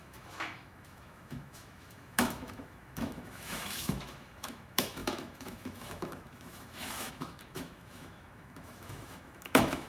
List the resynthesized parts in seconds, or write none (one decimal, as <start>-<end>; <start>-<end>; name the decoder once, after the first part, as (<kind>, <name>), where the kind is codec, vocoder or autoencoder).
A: 0.0-9.9 (autoencoder, DAC-VAE)